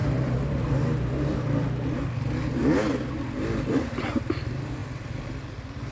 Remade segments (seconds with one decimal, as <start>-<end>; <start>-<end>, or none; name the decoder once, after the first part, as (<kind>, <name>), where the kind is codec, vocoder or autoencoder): 4.8-5.5 (vocoder, BigVGAN v2)